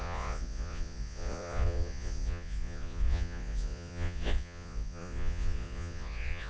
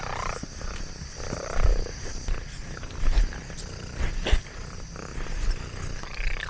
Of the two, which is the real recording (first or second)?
second